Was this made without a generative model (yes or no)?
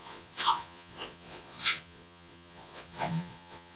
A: no